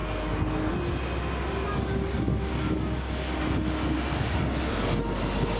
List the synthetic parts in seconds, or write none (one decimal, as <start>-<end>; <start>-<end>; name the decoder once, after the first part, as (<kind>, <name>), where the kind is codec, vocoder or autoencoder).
none